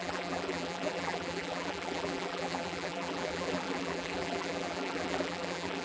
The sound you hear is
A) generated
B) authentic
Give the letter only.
A